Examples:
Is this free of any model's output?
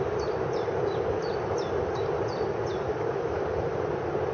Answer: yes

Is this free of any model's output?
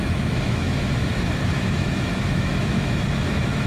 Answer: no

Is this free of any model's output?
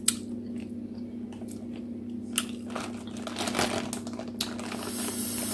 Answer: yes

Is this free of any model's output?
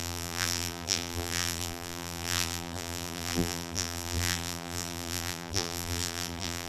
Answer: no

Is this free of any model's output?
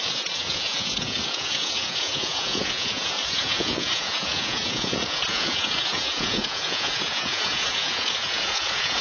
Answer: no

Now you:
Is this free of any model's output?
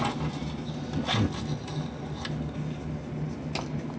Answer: yes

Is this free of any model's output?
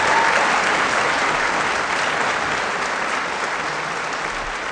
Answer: yes